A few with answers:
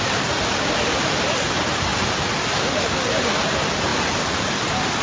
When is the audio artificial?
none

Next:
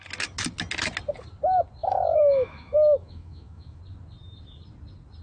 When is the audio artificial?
1.8-3.8 (autoencoder, DAC-VAE)

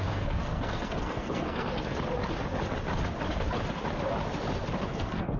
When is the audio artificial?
0.0-1.7 (codec, SNAC); 4.8-5.4

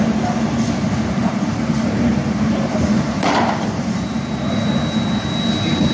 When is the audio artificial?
1.2-4.7 (vocoder, BigVGAN v2)

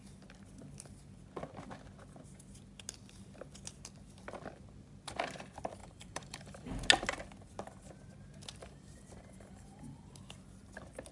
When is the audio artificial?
5.8-6.7 (vocoder, BigVGAN v2); 8.6-10.2